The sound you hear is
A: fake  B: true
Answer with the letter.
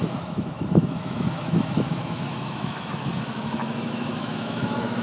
A